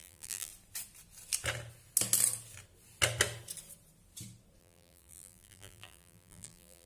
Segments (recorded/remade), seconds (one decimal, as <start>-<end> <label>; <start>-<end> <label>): 0.0-0.5 remade; 0.5-4.6 recorded; 4.6-6.9 remade